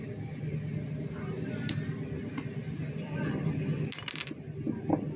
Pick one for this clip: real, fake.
real